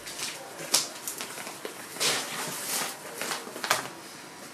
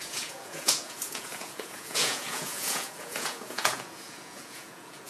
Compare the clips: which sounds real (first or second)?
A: first